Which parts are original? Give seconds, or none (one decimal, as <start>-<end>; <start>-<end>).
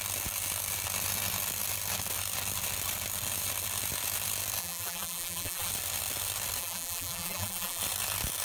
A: 0.0-4.6; 5.7-6.6; 7.8-8.4